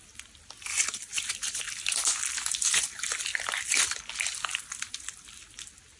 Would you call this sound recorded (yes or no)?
yes